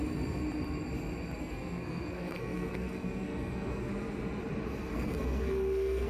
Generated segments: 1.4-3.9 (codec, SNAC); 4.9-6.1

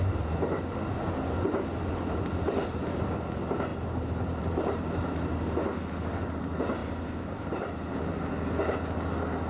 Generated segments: 3.7-5.3 (vocoder, BigVGAN v2); 6.8-8.0

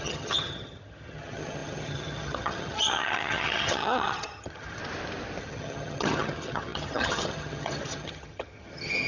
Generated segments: 0.0-4.8 (vocoder, HiFi-GAN); 5.4-9.1

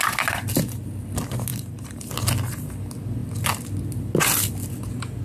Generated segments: 1.5-2.1 (vocoder, BigVGAN v2)